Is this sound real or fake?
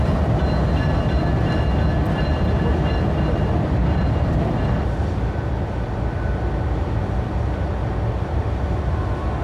real